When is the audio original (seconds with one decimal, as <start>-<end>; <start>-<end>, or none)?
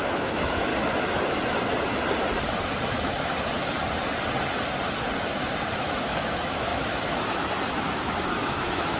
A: 0.7-5.7